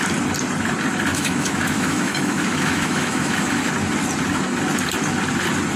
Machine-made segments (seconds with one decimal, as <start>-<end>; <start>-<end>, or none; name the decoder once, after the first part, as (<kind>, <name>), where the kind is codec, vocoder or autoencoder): 1.1-3.7 (autoencoder, DAC-VAE)